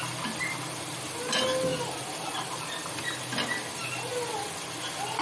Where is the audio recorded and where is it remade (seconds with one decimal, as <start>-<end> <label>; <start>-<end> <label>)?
0.0-5.2 recorded